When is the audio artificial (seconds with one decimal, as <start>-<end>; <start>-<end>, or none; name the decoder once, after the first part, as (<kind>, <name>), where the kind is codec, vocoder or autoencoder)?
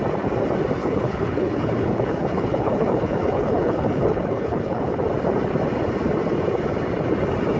0.8-4.8 (codec, HILCodec)